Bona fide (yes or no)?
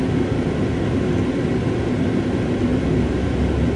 yes